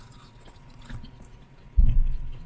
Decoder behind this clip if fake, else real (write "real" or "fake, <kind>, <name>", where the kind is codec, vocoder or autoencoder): fake, vocoder, Vocos